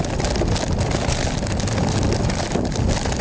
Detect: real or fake real